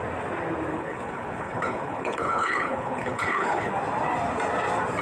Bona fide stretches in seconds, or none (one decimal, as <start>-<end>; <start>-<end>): 0.0-0.7; 3.7-5.0